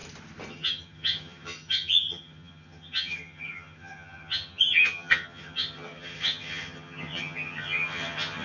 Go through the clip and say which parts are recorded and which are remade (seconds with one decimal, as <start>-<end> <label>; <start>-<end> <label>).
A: 0.0-0.5 recorded; 0.5-8.4 remade